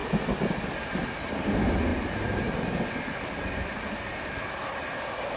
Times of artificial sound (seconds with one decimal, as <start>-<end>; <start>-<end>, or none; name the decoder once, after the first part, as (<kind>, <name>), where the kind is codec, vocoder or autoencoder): none